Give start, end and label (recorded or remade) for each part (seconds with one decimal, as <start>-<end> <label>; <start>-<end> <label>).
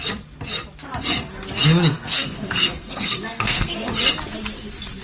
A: 0.0-1.9 recorded; 1.9-3.9 remade; 3.9-5.0 recorded